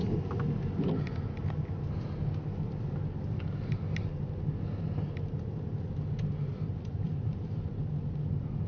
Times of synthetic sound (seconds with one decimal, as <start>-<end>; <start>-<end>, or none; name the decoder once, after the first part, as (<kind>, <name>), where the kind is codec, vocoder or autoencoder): 6.5-7.7 (vocoder, BigVGAN v2)